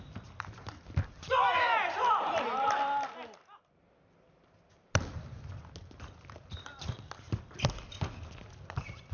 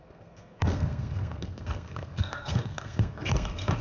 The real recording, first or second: first